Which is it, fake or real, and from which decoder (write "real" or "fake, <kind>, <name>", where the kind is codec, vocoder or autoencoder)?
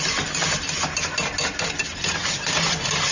real